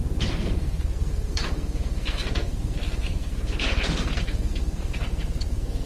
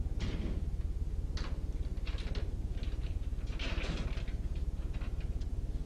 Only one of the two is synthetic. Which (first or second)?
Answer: first